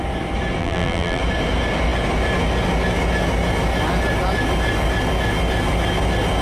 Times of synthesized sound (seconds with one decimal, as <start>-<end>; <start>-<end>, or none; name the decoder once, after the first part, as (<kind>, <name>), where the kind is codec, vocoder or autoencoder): 0.6-1.2 (vocoder, BigVGAN v2)